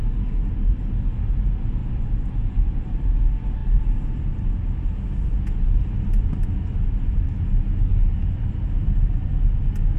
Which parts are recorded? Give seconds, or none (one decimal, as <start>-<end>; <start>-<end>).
0.0-1.8; 3.2-10.0